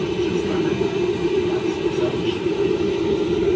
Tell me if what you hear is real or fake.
real